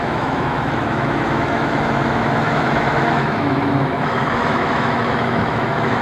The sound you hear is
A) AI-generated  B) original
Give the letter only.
A